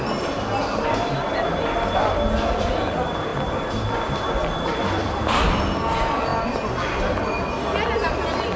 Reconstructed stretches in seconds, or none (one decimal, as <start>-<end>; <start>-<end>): none